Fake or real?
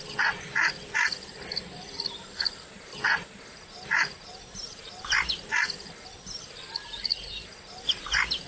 real